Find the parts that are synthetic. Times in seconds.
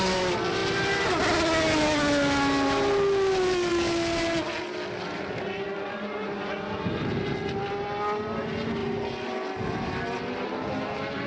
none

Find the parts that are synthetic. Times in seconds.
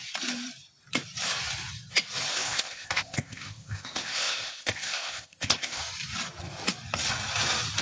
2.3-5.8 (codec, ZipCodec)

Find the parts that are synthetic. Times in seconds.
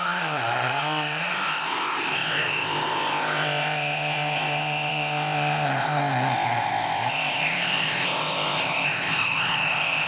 0.0-10.1 (codec, ZipCodec)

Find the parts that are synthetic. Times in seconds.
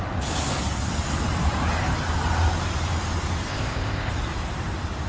3.5-4.1 (codec, ZipCodec)